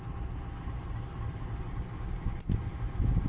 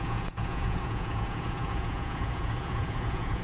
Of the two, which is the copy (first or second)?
second